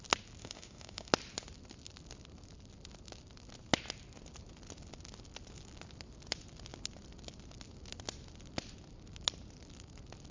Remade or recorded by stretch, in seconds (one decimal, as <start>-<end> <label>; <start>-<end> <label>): 0.0-0.4 recorded; 0.4-1.1 remade; 1.1-10.3 recorded